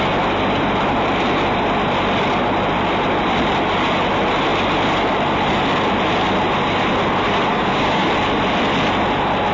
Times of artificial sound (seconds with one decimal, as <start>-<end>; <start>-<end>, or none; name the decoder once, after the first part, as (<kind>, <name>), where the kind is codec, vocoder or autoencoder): 7.5-8.1 (codec, DAC)